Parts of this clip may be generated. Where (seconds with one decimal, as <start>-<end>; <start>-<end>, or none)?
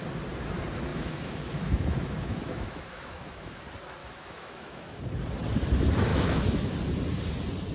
0.9-3.6; 4.0-5.0; 6.1-6.7